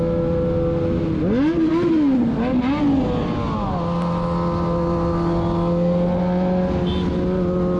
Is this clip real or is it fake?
real